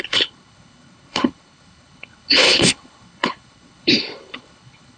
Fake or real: fake